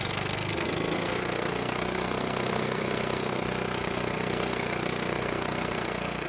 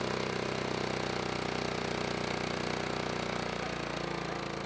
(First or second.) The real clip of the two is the second